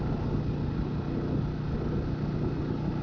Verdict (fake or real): real